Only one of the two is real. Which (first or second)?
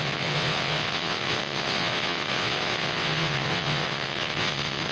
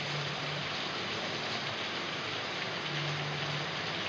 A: second